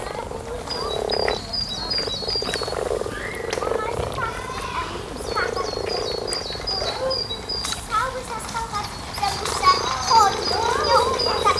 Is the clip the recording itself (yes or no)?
yes